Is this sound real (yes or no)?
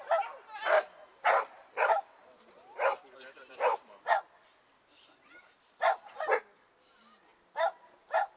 yes